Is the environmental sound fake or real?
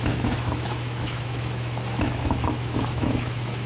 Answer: fake